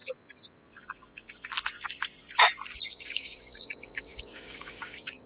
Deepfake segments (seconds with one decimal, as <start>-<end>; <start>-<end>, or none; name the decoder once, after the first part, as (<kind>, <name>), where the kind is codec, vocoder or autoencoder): 2.9-5.3 (codec, DAC)